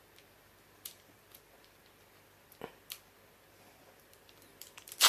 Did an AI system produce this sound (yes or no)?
no